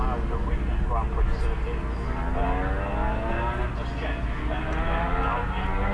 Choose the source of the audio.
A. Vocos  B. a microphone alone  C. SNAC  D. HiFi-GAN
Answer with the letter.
B